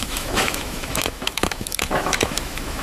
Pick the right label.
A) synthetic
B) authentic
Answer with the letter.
A